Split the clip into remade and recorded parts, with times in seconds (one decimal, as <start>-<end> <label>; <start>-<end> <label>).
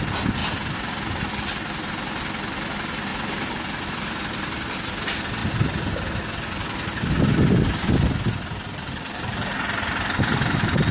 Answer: 0.0-10.9 recorded